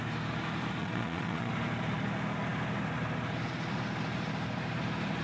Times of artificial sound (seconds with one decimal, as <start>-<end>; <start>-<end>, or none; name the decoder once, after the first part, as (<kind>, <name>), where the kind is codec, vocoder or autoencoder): 0.8-1.5 (vocoder, Vocos)